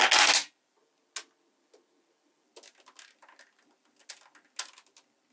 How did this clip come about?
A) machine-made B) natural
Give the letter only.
B